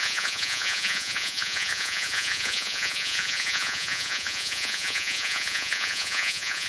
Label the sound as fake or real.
fake